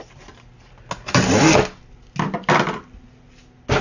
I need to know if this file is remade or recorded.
recorded